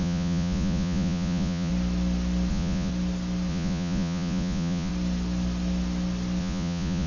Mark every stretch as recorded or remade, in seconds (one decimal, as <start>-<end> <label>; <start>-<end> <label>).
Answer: 0.0-1.7 remade; 1.7-2.5 recorded; 2.5-2.9 remade; 2.9-3.5 recorded; 3.5-4.9 remade; 4.9-6.4 recorded; 6.4-7.1 remade